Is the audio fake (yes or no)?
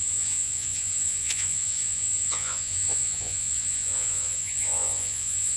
yes